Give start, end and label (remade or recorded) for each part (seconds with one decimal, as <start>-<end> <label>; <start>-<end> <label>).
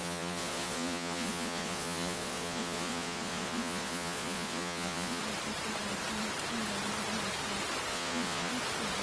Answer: 0.0-5.2 remade; 5.2-7.9 recorded; 7.9-8.5 remade; 8.5-9.0 recorded